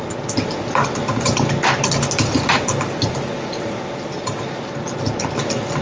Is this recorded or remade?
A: recorded